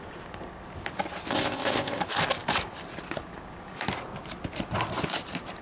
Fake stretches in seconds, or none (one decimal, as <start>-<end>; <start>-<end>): 1.3-2.0